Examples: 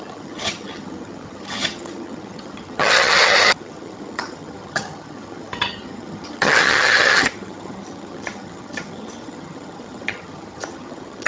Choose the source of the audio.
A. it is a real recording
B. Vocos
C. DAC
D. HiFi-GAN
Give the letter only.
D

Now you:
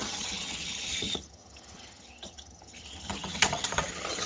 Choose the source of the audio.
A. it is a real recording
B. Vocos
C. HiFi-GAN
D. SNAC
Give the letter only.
C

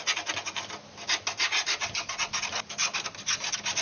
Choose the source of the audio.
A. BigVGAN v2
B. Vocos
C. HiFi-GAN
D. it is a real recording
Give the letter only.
D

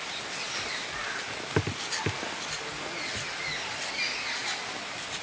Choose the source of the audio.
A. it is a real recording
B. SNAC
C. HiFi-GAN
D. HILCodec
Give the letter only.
A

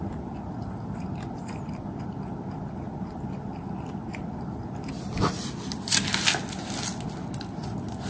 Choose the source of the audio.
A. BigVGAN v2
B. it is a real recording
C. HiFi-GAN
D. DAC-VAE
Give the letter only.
B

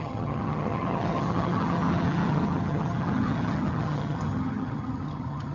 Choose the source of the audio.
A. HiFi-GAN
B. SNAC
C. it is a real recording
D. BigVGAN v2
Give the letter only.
A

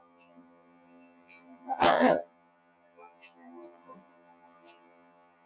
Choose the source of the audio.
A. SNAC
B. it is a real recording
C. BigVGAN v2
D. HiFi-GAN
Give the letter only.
D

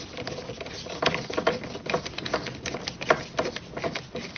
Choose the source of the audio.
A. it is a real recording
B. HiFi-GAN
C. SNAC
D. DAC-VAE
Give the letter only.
A